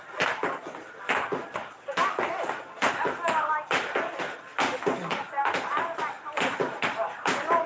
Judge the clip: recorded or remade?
recorded